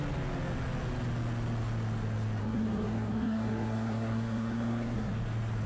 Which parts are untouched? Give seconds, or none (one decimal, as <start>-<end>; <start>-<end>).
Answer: 0.0-2.4; 5.1-5.7